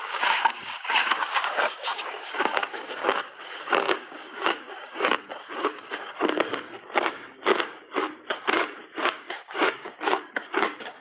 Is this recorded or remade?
remade